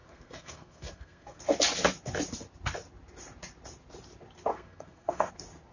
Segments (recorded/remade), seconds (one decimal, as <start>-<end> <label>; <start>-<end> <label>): 0.0-1.4 remade; 1.4-4.5 recorded; 4.5-5.3 remade; 5.3-5.7 recorded